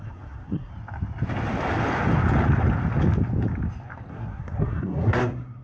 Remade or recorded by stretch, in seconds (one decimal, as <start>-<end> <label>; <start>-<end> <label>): 0.0-0.7 remade; 0.7-4.1 recorded; 4.1-5.6 remade